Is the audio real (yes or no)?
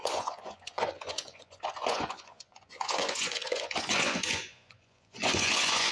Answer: no